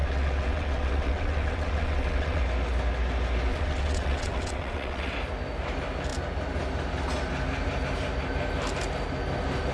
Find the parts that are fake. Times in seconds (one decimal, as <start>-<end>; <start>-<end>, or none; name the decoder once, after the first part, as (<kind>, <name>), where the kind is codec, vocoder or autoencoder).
0.0-2.4 (vocoder, WaveNeXt); 3.5-5.1